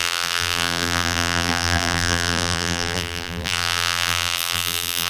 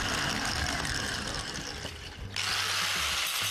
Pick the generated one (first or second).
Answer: first